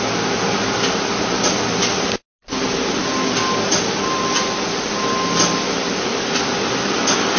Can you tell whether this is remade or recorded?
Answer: recorded